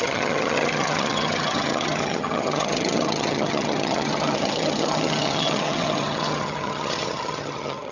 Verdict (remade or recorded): remade